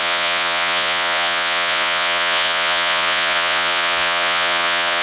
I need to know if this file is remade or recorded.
remade